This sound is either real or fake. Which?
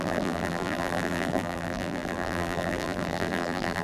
fake